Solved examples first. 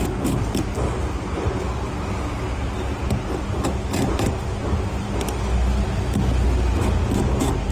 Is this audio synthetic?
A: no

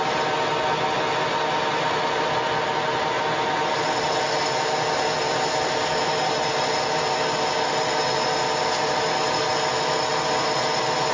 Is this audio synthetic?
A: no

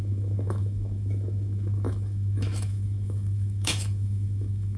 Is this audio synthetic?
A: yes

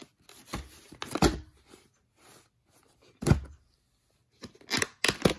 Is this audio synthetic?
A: no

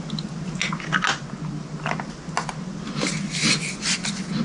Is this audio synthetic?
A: no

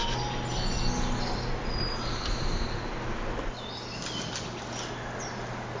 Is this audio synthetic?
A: no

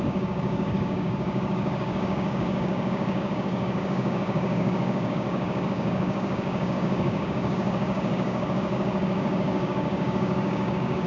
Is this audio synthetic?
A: yes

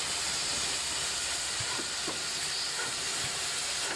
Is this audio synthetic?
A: no